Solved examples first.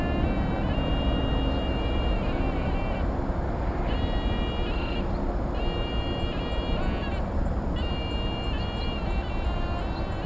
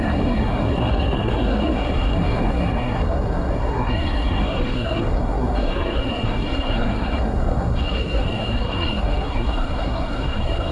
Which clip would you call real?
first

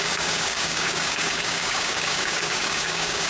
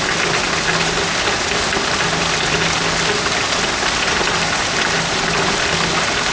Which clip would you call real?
second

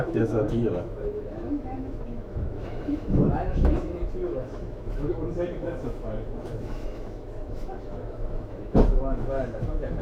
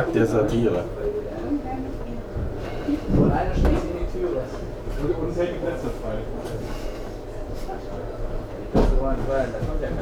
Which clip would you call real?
second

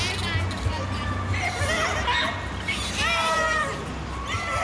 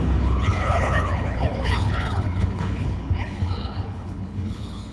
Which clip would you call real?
first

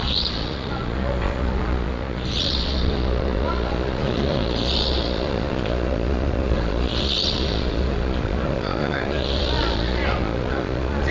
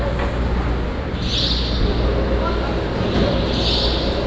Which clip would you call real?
second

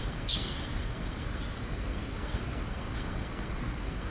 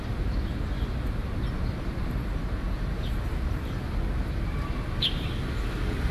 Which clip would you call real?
second